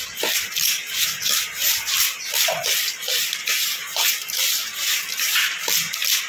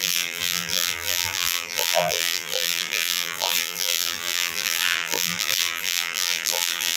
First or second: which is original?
first